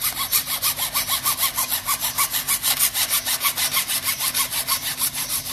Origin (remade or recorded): recorded